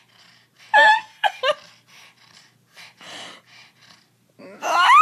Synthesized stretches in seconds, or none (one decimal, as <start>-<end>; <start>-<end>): 0.9-1.4